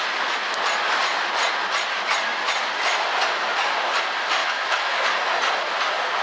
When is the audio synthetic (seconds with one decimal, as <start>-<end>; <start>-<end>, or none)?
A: 4.4-5.0